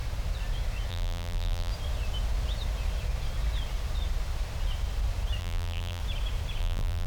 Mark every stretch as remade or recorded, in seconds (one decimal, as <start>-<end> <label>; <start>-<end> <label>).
0.0-0.9 recorded; 0.9-1.7 remade; 1.7-5.4 recorded; 5.4-6.0 remade; 6.0-6.6 recorded; 6.6-7.1 remade